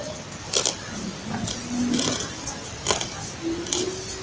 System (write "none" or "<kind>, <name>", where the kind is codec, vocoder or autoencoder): none